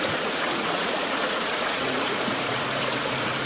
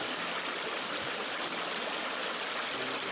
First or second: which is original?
second